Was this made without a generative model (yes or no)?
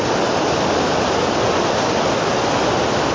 yes